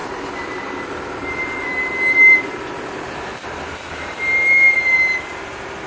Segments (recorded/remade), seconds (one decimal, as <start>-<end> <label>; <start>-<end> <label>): 0.0-5.9 recorded